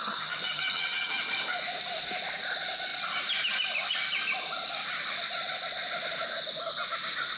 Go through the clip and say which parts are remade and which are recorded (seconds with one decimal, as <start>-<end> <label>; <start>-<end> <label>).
0.0-1.1 remade; 1.1-7.4 recorded